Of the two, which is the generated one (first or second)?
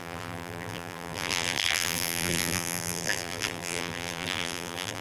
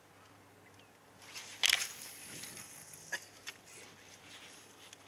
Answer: first